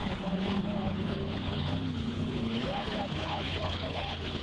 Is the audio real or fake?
fake